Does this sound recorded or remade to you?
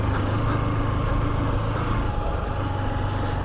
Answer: recorded